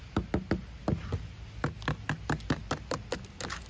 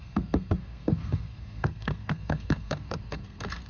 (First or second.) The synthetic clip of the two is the second